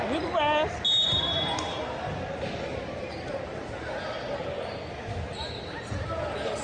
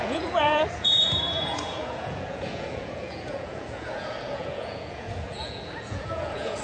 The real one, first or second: first